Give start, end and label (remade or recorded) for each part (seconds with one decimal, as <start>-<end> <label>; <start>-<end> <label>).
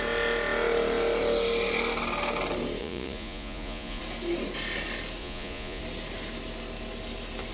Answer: 0.0-2.8 recorded; 2.8-4.0 remade; 4.0-5.2 recorded; 5.2-5.8 remade; 5.8-7.5 recorded